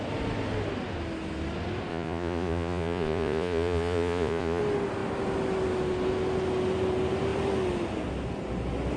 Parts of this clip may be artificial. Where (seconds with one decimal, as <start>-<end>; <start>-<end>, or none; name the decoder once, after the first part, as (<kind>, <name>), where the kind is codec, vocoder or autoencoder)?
1.9-4.6 (vocoder, Vocos)